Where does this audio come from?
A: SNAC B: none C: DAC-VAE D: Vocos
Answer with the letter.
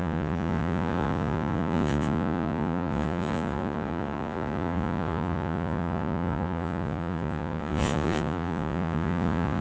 D